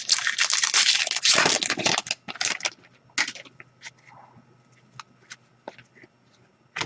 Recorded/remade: recorded